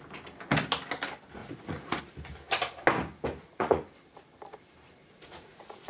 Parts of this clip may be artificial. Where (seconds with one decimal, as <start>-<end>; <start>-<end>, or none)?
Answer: 1.4-2.0; 3.4-3.9; 5.0-5.9